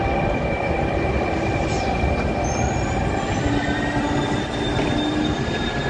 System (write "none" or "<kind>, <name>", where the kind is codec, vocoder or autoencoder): none